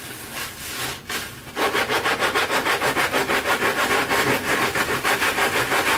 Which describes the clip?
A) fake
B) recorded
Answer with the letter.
B